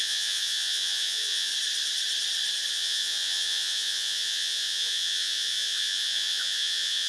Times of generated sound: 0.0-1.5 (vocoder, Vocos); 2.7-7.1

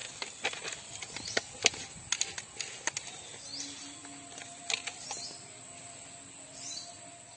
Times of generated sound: none

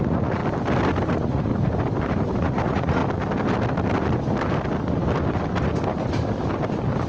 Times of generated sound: 0.0-0.4 (vocoder, Vocos); 1.1-1.5; 2.4-3.0

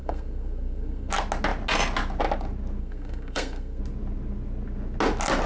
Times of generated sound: 0.0-1.1 (codec, SNAC); 2.8-3.8

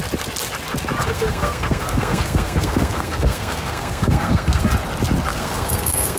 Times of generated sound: 1.0-4.7 (codec, SNAC); 5.3-6.2

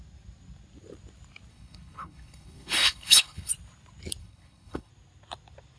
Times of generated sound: 1.5-3.5 (codec, HILCodec); 4.2-4.9

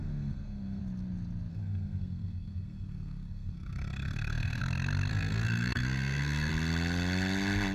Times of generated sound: 0.0-0.8 (codec, SNAC); 1.5-4.6; 5.1-6.5

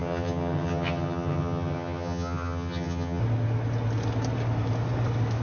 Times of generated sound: 0.0-3.2 (vocoder, HiFi-GAN)